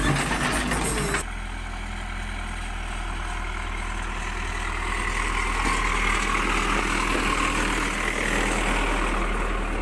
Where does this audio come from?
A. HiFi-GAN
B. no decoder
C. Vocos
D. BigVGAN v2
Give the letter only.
B